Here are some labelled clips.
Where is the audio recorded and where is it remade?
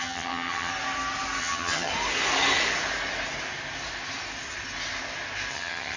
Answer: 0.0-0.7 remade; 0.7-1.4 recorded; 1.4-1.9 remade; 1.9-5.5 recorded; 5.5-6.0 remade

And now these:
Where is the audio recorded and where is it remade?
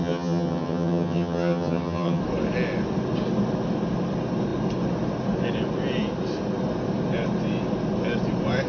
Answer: 0.0-2.2 remade; 2.2-8.7 recorded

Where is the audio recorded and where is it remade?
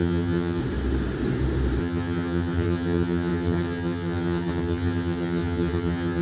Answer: 0.0-0.6 remade; 0.6-1.8 recorded; 1.8-6.2 remade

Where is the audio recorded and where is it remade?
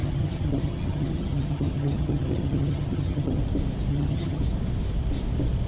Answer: 0.0-3.4 remade; 3.4-3.9 recorded; 3.9-4.4 remade; 4.4-5.7 recorded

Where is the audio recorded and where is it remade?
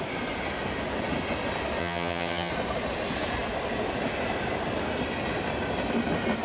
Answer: 0.0-1.8 recorded; 1.8-2.5 remade; 2.5-6.4 recorded